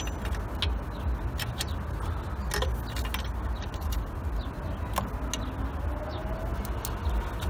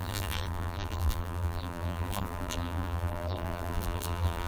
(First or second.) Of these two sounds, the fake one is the second